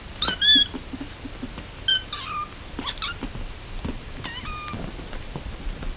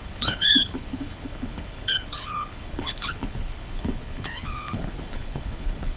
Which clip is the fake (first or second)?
second